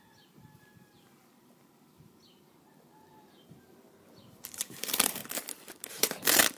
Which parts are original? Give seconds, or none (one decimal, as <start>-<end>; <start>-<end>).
5.2-5.9